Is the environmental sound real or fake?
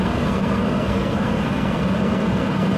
fake